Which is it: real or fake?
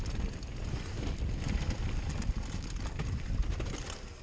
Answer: real